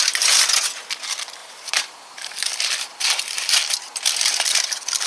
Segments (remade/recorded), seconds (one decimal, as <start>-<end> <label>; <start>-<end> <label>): 0.0-1.4 recorded; 1.4-2.5 remade; 2.5-5.1 recorded